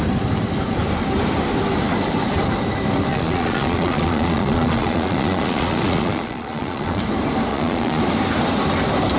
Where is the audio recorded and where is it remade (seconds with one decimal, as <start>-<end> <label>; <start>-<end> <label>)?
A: 0.0-3.1 recorded; 3.1-7.0 remade; 7.0-7.5 recorded; 7.5-8.0 remade; 8.0-9.2 recorded